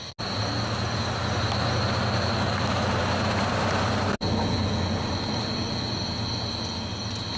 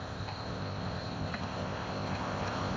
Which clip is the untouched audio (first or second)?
first